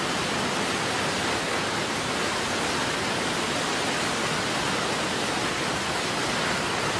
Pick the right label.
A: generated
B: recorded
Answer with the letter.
B